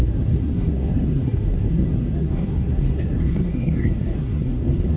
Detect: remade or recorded remade